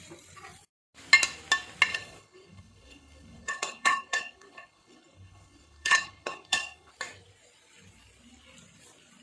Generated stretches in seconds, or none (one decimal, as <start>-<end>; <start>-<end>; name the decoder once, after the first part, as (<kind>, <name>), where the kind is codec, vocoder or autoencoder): 1.9-6.9 (codec, HILCodec)